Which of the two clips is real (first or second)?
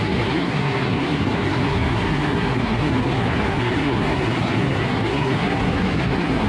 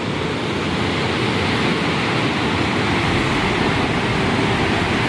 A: second